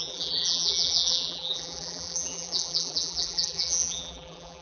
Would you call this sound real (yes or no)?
no